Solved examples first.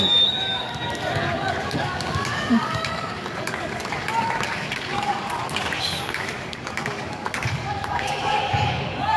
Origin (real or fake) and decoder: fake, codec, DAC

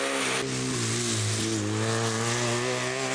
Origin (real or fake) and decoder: real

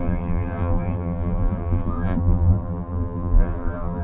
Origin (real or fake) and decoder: fake, vocoder, BigVGAN v2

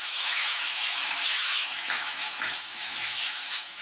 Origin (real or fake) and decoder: fake, autoencoder, DAC-VAE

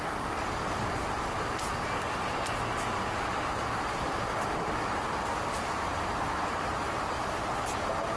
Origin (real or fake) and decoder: real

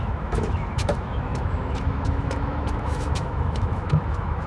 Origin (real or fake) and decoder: fake, autoencoder, DAC-VAE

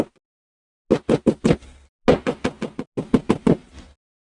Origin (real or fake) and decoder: real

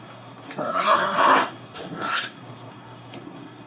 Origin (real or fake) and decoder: fake, codec, SNAC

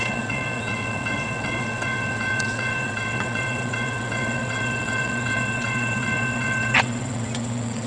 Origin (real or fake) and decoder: fake, vocoder, WaveNeXt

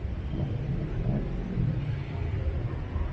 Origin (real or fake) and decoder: real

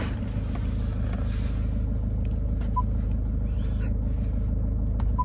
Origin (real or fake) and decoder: real